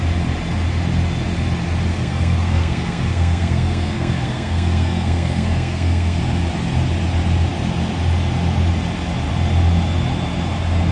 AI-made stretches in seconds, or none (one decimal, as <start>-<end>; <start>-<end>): 1.9-6.2

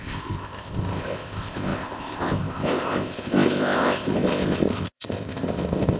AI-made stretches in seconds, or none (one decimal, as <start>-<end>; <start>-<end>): 0.0-6.0

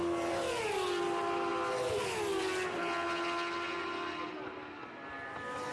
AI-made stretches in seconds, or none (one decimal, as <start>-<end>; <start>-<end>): none